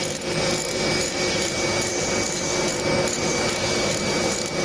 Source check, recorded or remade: remade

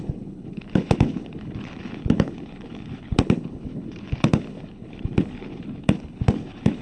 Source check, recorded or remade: remade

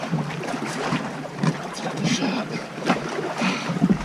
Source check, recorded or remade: remade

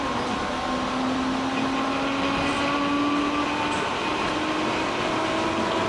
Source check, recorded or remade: recorded